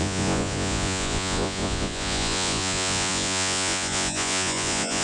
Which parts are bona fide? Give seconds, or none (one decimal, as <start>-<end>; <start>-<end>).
none